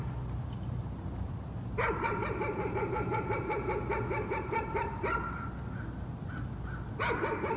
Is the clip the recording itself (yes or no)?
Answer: yes